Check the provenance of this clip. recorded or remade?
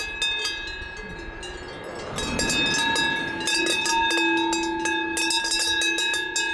recorded